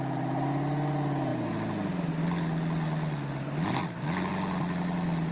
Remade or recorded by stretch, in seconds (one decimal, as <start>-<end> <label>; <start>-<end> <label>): 0.0-5.3 recorded

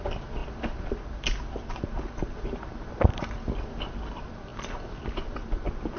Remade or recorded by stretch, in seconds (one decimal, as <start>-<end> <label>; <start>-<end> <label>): 0.0-6.0 recorded

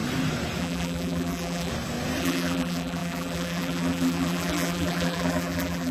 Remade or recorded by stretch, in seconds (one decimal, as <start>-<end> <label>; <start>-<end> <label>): 0.0-0.6 recorded; 0.6-1.7 remade; 1.7-2.2 recorded; 2.2-5.9 remade

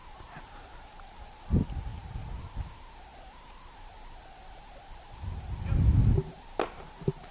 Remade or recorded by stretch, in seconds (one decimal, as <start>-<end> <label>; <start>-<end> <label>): 0.0-0.7 remade; 0.7-7.3 recorded

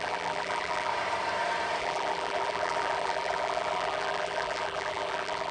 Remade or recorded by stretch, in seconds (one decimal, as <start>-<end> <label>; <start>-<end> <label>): 0.0-0.9 remade; 0.9-1.8 recorded; 1.8-5.5 remade

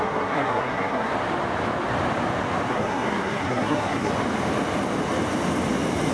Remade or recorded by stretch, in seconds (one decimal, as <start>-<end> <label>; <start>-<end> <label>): 0.0-1.1 remade; 1.1-2.7 recorded; 2.7-4.1 remade; 4.1-6.1 recorded

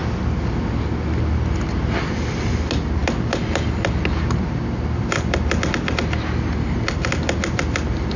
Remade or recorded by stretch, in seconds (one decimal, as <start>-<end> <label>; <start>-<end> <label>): 0.0-8.2 recorded

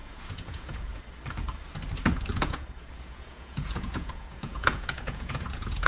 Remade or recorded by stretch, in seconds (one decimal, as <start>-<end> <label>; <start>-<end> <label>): 0.0-1.0 remade; 1.0-2.3 recorded; 2.3-5.9 remade